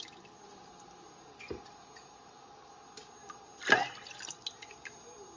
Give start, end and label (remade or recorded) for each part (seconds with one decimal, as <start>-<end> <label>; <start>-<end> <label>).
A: 0.0-5.4 recorded